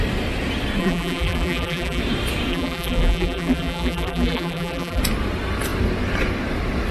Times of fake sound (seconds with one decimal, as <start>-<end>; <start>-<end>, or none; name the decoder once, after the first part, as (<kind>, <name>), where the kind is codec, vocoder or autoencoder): 0.8-2.0 (vocoder, BigVGAN v2); 2.5-5.0